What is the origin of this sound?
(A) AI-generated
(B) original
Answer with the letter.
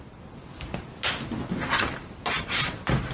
B